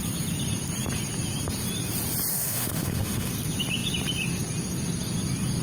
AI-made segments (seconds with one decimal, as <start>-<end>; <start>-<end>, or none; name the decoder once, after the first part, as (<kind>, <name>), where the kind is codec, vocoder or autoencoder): 2.3-3.3 (autoencoder, DAC-VAE)